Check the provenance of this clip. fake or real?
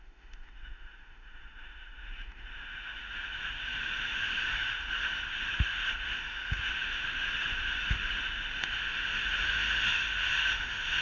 fake